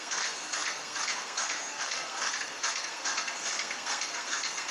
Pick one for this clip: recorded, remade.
remade